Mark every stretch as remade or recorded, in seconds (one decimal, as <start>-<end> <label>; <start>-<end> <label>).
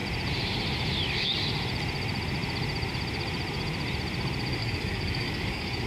0.0-4.6 recorded; 4.6-5.9 remade